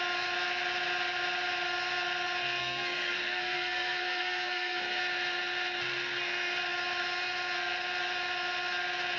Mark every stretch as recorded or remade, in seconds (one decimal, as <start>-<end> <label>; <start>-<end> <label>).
0.0-2.6 recorded; 2.6-5.0 remade; 5.0-9.2 recorded